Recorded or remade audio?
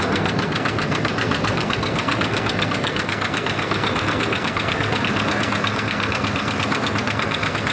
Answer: remade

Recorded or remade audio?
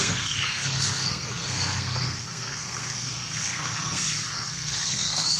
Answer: remade